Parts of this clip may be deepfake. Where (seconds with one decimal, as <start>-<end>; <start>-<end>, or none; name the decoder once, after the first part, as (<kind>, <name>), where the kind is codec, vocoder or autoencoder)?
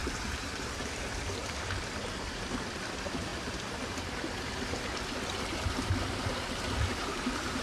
0.0-1.1 (vocoder, BigVGAN v2); 7.0-7.6